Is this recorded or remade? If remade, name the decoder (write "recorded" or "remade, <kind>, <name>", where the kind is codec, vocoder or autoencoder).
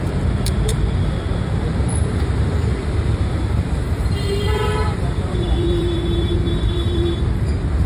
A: remade, vocoder, BigVGAN v2